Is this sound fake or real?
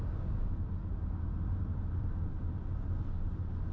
real